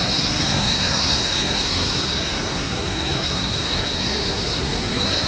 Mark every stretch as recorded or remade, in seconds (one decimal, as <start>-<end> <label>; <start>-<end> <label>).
0.0-5.3 remade